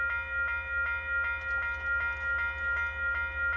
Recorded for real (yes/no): yes